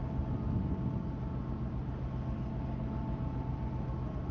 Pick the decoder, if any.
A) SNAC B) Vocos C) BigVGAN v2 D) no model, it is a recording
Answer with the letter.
D